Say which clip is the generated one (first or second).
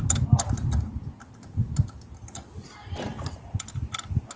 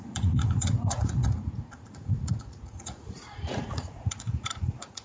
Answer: second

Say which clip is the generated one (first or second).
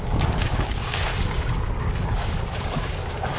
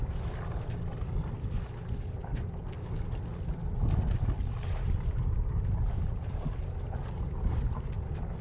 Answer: first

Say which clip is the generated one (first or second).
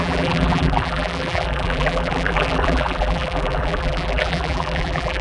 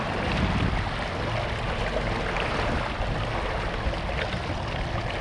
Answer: first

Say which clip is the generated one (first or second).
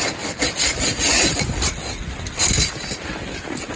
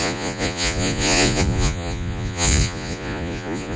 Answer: second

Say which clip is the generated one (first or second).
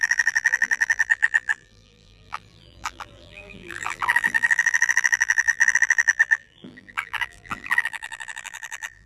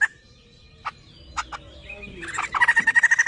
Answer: first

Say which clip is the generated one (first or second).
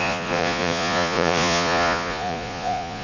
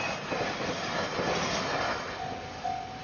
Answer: first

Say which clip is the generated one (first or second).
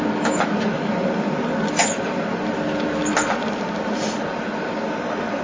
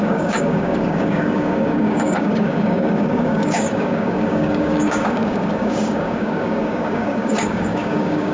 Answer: second